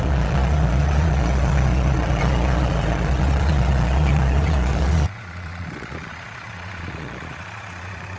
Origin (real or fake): fake